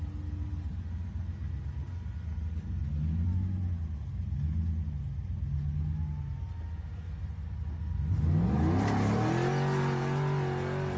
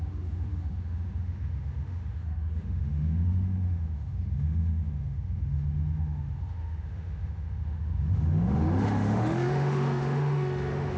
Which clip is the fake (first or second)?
second